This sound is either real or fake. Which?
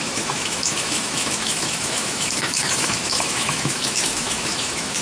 fake